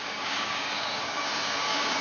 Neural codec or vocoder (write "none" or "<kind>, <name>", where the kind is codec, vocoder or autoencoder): codec, DAC